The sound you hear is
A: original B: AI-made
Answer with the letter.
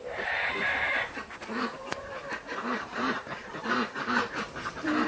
B